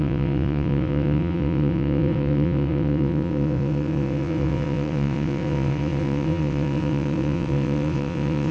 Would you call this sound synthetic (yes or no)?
yes